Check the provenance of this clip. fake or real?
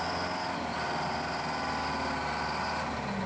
real